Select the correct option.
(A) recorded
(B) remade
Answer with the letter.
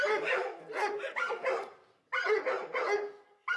A